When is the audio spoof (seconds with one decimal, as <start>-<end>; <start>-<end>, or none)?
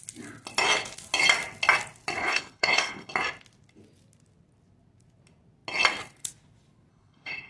2.2-3.1; 6.9-7.5